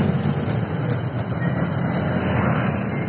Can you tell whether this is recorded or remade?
recorded